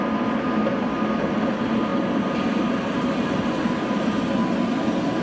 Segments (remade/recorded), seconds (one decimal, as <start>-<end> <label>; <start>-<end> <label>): 0.0-5.2 recorded